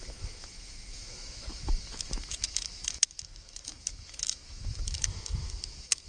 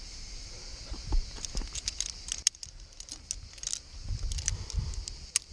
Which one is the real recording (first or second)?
second